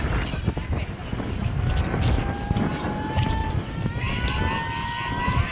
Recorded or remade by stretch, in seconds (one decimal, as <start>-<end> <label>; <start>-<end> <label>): 0.0-3.4 recorded; 3.4-4.4 remade; 4.4-5.5 recorded